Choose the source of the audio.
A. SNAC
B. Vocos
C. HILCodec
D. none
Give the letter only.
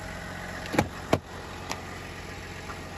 D